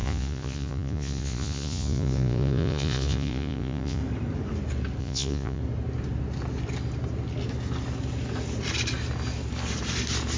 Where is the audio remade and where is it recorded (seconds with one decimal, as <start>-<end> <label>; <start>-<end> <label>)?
0.0-4.0 remade; 4.0-5.0 recorded; 5.0-5.6 remade; 5.6-10.4 recorded